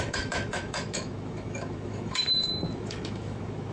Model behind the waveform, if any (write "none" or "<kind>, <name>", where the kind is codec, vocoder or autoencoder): autoencoder, DAC-VAE